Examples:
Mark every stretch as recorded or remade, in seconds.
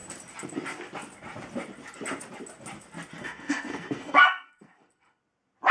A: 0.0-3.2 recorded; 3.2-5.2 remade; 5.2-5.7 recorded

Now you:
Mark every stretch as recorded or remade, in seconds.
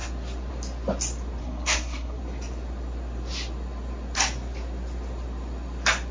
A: 0.0-1.4 recorded; 1.4-2.2 remade; 2.2-6.1 recorded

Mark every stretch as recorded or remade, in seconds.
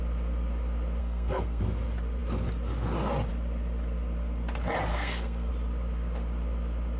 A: 0.0-1.0 recorded; 1.0-1.6 remade; 1.6-4.9 recorded; 4.9-5.5 remade; 5.5-7.0 recorded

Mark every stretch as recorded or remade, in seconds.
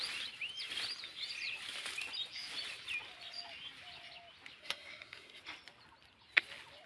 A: 0.0-4.6 recorded; 4.6-5.4 remade; 5.4-6.9 recorded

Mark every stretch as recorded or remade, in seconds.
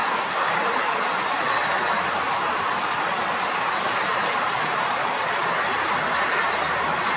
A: 0.0-0.5 remade; 0.5-7.2 recorded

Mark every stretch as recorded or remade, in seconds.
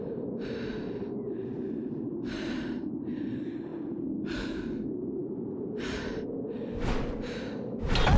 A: 0.0-8.2 recorded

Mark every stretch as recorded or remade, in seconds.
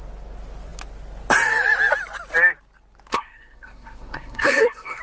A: 0.0-3.1 recorded; 3.1-5.0 remade